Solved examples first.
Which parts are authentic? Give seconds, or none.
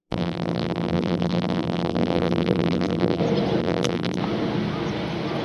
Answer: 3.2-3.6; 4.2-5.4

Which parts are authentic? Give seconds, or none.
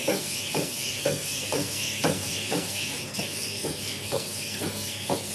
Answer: none